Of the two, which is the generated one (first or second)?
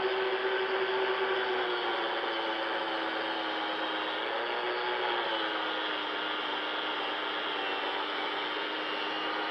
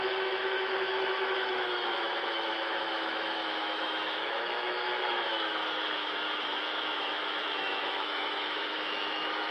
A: second